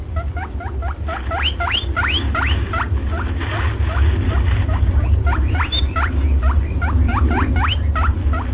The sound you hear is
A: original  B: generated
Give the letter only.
A